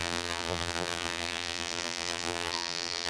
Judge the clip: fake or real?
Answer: fake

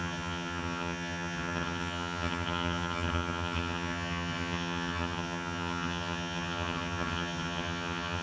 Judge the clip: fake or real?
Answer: fake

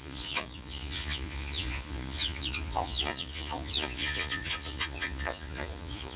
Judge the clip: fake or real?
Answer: fake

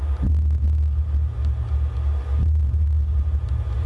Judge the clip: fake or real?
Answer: real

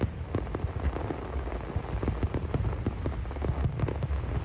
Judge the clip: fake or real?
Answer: real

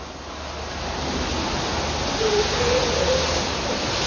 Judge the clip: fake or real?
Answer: real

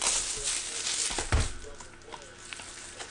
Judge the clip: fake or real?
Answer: real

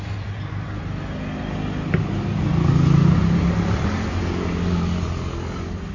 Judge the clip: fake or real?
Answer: real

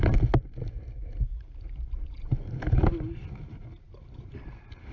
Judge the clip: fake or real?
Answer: real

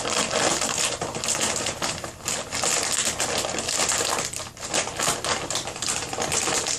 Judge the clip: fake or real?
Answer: real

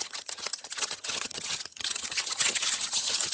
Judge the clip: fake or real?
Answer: fake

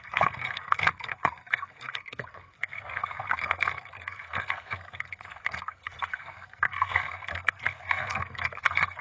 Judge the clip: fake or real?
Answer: fake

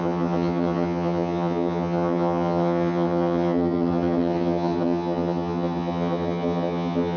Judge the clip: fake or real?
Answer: fake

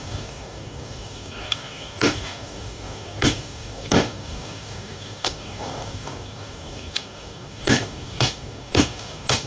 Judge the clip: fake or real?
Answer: fake